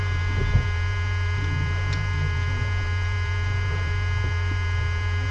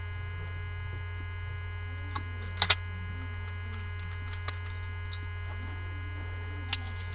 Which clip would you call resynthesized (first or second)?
first